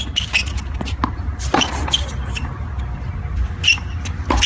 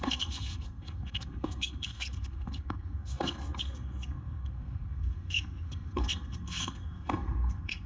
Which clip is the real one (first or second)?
first